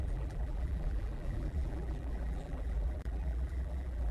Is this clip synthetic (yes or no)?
yes